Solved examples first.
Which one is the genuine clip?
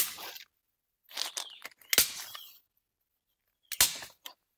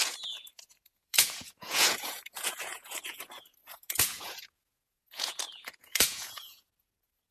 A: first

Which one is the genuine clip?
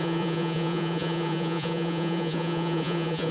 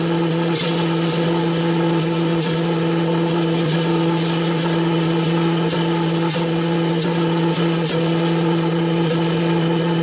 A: second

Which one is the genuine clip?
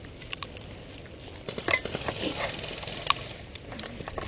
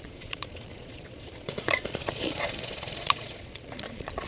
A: first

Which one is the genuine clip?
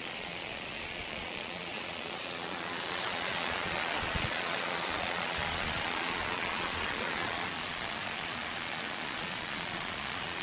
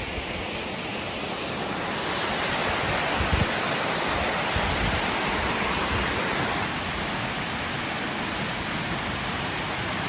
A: second